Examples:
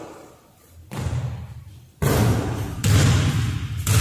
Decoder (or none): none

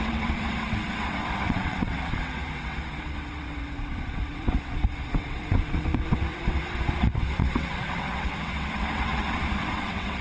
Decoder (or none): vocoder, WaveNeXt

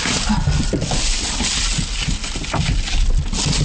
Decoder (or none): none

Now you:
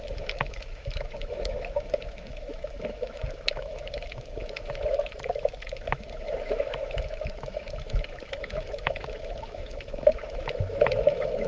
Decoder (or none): autoencoder, DAC-VAE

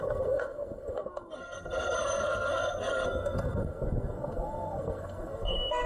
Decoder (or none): codec, SNAC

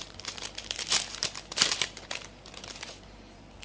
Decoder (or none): vocoder, BigVGAN v2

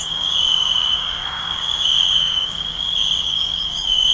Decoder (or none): codec, DAC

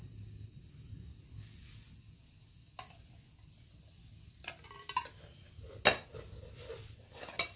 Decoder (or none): none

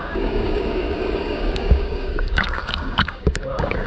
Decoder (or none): codec, DAC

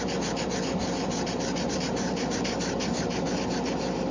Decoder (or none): none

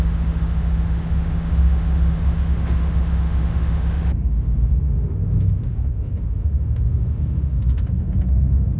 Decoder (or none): autoencoder, DAC-VAE